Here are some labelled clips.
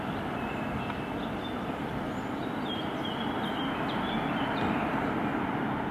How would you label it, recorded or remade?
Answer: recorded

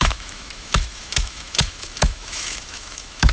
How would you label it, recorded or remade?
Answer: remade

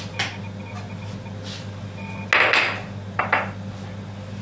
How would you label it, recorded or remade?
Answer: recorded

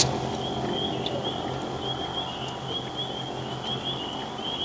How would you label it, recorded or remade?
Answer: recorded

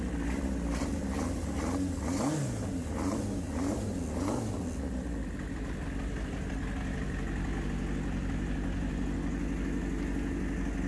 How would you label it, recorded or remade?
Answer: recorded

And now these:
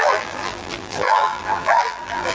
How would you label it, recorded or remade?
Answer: remade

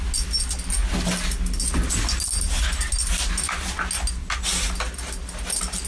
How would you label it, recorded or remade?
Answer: recorded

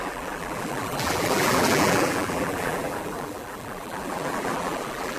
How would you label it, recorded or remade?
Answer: remade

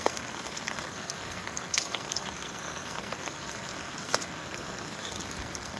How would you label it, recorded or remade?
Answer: remade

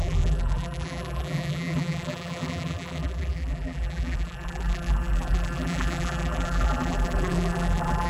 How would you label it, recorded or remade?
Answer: remade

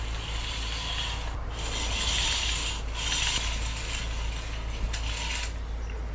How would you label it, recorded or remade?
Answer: recorded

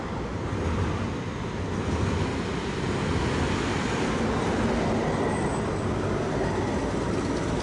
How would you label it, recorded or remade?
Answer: recorded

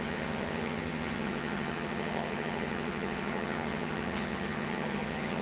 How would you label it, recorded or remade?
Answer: remade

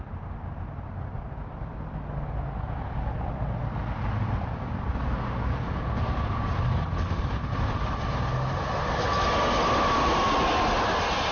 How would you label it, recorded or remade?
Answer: recorded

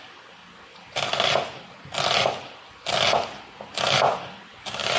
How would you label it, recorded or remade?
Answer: recorded